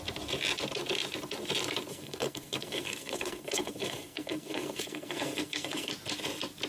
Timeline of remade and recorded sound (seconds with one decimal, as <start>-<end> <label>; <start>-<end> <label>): 0.0-1.9 recorded; 1.9-5.9 remade; 5.9-6.7 recorded